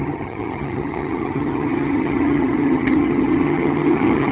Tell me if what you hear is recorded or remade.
remade